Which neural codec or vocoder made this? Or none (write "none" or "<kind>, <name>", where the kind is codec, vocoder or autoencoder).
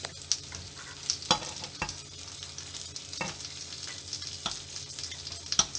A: none